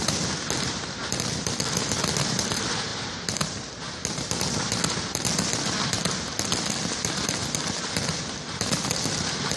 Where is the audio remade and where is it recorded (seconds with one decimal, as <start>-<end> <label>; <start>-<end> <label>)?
0.0-9.6 recorded